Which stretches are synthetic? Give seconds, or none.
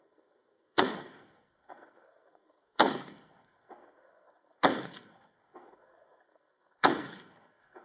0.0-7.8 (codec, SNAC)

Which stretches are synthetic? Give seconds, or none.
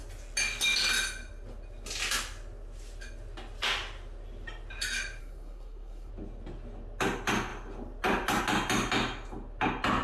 5.2-6.1 (codec, SNAC)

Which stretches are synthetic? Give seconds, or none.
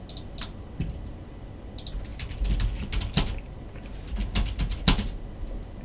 none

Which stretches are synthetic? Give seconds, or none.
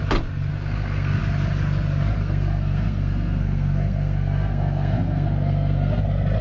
0.5-1.2 (codec, SNAC); 2.2-6.0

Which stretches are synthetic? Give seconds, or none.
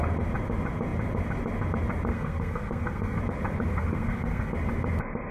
2.1-3.2 (codec, SNAC); 3.7-4.5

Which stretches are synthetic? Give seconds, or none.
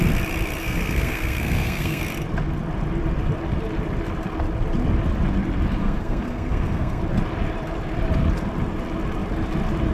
0.6-2.0 (codec, SNAC); 5.8-7.0